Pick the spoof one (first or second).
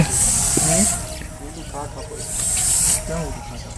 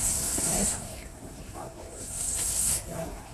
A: second